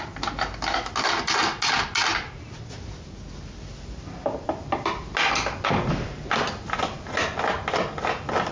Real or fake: real